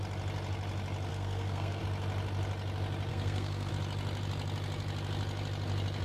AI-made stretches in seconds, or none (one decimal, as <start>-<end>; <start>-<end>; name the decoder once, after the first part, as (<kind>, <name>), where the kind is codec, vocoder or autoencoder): 1.1-1.8 (codec, SNAC); 3.1-3.7